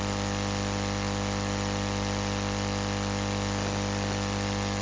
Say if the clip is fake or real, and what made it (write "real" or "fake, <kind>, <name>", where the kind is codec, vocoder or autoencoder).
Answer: real